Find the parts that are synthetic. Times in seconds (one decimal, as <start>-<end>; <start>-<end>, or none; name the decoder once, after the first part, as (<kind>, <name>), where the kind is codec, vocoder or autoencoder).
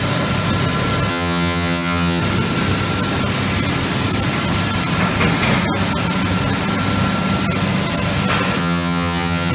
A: 1.1-2.2 (vocoder, HiFi-GAN); 8.6-9.5